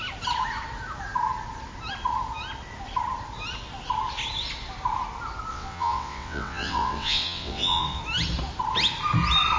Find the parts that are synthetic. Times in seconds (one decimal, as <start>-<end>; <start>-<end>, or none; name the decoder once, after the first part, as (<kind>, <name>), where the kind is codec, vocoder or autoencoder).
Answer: 5.5-8.0 (vocoder, WaveNeXt)